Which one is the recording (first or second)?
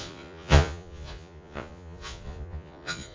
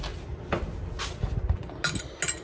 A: second